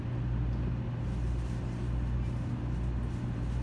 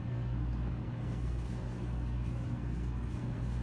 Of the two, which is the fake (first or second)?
second